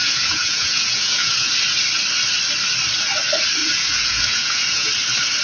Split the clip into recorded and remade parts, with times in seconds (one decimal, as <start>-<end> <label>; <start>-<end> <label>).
0.0-1.5 remade; 1.5-3.6 recorded; 3.6-4.9 remade; 4.9-5.4 recorded